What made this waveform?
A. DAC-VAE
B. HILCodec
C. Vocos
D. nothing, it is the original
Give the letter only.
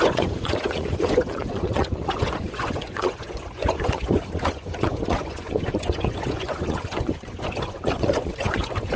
C